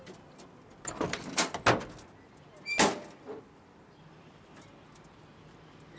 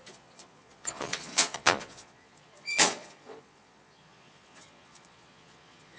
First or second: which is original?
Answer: first